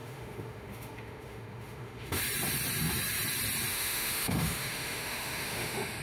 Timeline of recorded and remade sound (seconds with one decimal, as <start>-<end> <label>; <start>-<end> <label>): 0.0-2.2 remade; 2.2-3.7 recorded; 3.7-6.0 remade